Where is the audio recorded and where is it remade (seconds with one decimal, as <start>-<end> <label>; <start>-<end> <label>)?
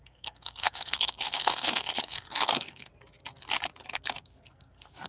0.0-2.9 remade; 2.9-4.2 recorded; 4.2-5.1 remade